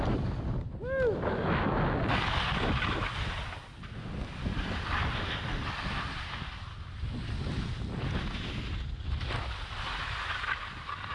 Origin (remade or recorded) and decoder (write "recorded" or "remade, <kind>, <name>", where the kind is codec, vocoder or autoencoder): recorded